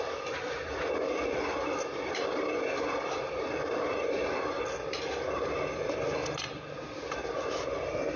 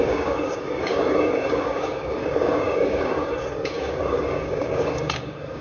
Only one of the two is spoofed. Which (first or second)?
second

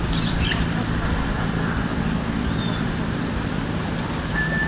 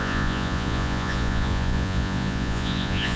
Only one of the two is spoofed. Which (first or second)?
second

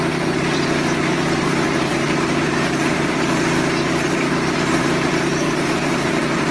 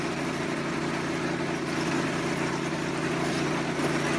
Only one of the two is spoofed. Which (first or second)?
first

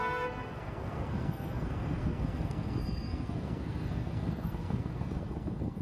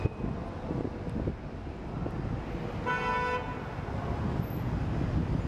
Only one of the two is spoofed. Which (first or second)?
first